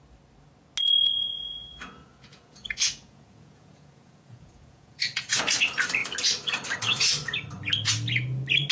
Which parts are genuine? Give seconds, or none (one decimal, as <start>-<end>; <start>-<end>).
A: 0.0-1.0; 5.4-8.7